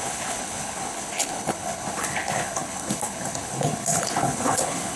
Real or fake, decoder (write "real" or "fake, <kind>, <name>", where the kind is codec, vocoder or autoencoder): fake, codec, HILCodec